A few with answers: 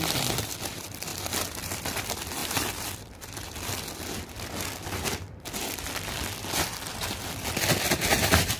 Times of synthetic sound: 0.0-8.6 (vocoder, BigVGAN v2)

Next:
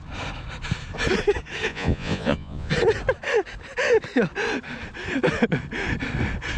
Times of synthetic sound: 1.7-2.7 (vocoder, Vocos)

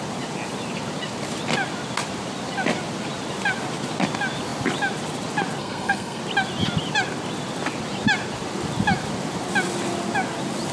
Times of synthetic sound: 5.6-6.2 (codec, SNAC)